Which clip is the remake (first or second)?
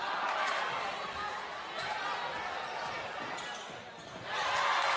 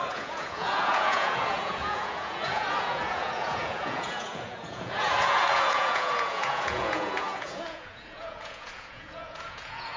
second